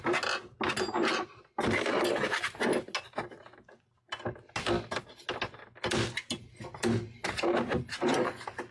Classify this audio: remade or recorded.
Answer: recorded